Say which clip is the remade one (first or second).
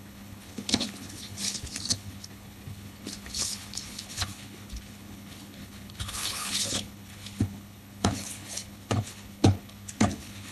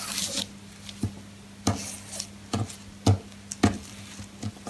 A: first